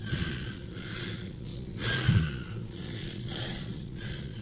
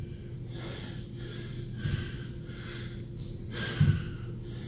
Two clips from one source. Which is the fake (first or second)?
first